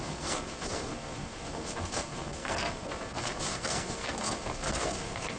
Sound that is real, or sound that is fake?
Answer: fake